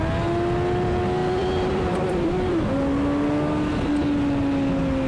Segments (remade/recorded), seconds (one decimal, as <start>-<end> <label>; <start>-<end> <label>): 0.0-1.2 recorded; 1.2-2.8 remade; 2.8-5.1 recorded